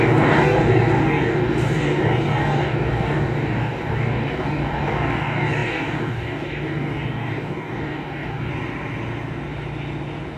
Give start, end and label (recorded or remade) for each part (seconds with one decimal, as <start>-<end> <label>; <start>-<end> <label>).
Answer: 0.0-8.5 remade; 8.5-10.4 recorded